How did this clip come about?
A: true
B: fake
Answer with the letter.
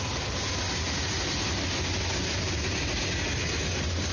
A